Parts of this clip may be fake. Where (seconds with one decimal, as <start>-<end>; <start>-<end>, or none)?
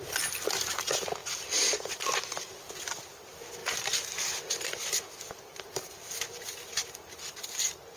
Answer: 1.2-2.6; 3.6-7.1